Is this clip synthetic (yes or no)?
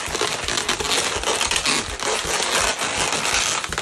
no